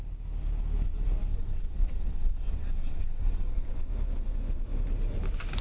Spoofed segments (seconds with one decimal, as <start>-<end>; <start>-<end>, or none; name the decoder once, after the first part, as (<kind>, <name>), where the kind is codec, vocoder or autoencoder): 1.3-3.9 (vocoder, WaveNeXt)